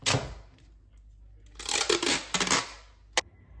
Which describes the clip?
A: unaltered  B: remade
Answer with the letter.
A